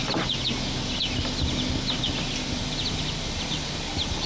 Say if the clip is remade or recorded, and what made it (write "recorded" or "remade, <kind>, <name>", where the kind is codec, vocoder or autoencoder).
recorded